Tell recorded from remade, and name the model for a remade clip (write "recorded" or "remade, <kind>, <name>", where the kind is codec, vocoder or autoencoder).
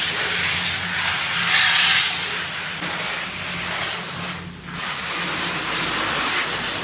recorded